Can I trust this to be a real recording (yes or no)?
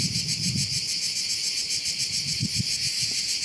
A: yes